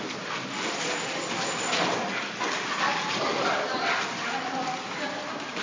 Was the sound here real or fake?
real